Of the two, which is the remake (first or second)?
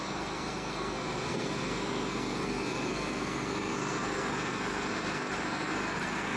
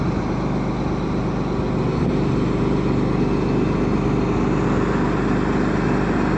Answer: first